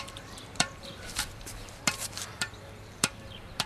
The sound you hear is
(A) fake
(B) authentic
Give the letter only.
A